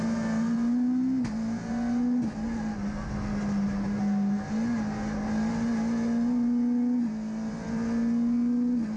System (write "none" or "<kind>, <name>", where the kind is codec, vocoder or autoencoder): none